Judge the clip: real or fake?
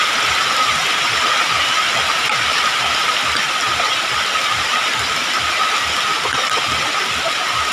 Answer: real